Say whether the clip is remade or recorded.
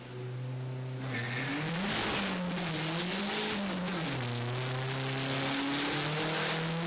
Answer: recorded